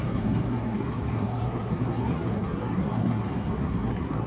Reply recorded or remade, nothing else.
remade